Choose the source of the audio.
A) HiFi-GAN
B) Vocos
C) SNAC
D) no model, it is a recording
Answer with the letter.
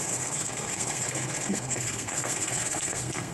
C